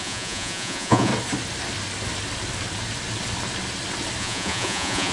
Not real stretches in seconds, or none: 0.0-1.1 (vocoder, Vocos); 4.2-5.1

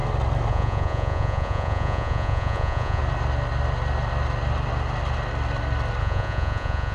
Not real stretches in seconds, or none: 0.5-3.0 (vocoder, Vocos); 6.0-6.9

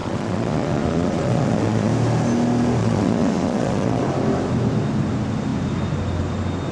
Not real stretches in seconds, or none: 0.0-1.9 (vocoder, Vocos); 2.8-4.0